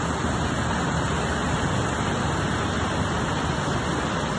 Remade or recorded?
recorded